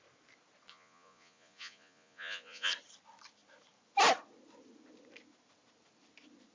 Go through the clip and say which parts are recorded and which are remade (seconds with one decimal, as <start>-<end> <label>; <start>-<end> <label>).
0.0-0.7 recorded; 0.7-2.7 remade; 2.7-6.5 recorded